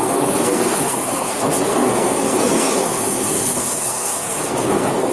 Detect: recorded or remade remade